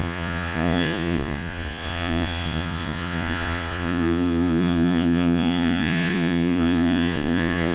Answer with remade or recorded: remade